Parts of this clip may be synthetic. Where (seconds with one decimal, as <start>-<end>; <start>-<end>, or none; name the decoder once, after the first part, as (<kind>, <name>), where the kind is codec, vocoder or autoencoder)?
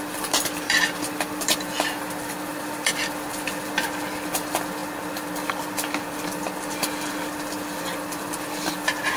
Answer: 0.0-4.8 (vocoder, BigVGAN v2); 5.5-9.2